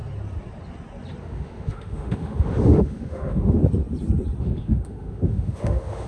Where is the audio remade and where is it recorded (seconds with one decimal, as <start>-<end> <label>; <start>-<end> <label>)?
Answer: 0.0-1.2 recorded; 1.2-3.6 remade; 3.6-4.4 recorded; 4.4-6.1 remade